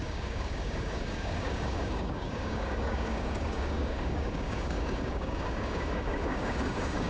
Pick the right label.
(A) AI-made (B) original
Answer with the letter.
A